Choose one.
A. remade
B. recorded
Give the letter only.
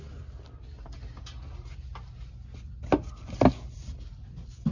B